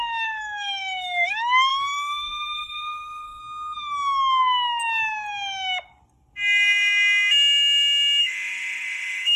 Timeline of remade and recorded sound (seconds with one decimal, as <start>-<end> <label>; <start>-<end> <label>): 0.0-3.4 remade; 3.4-8.2 recorded; 8.2-9.4 remade